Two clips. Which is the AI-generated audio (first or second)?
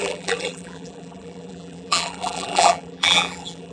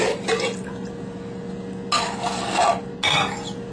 first